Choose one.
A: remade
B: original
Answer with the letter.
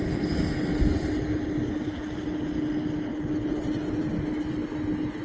B